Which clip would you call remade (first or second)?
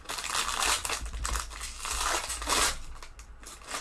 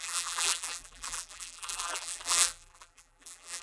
second